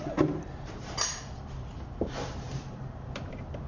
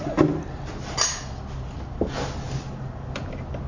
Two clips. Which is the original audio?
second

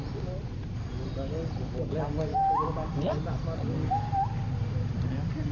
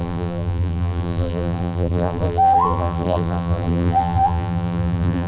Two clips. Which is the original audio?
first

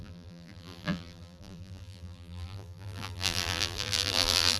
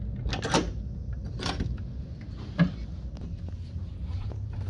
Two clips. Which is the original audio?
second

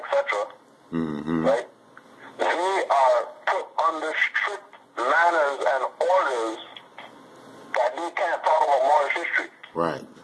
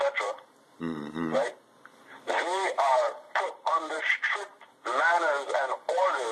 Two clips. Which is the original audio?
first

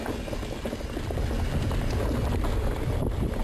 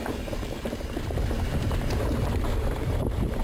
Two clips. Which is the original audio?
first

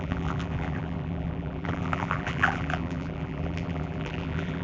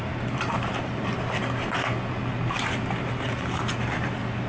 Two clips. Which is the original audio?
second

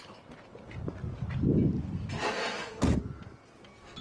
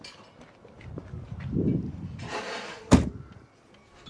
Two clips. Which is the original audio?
first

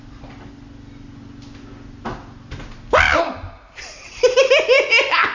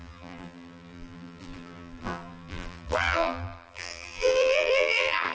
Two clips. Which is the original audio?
first